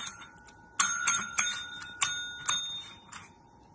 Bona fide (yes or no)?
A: yes